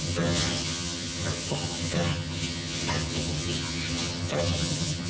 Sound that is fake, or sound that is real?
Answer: fake